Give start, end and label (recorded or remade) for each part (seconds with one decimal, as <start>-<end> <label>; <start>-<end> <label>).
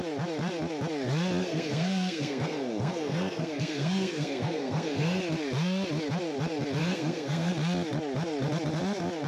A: 0.0-1.4 recorded; 1.4-5.2 remade; 5.2-6.8 recorded; 6.8-7.5 remade; 7.5-9.3 recorded